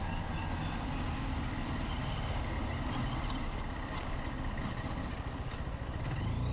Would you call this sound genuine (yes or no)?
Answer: yes